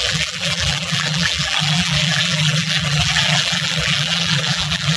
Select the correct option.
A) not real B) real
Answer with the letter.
A